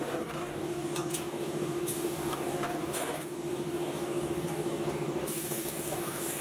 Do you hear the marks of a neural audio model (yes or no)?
yes